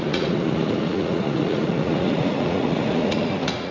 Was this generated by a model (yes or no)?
yes